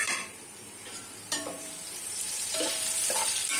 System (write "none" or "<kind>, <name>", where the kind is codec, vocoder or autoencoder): vocoder, BigVGAN v2